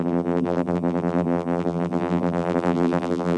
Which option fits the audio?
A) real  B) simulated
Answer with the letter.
B